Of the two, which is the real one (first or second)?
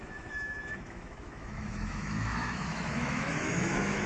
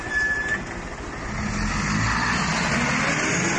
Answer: second